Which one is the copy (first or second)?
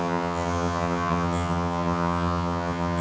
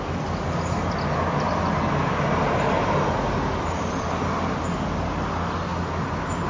first